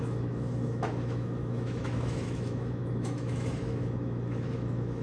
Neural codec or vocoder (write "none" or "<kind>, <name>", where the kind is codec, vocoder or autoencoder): autoencoder, DAC-VAE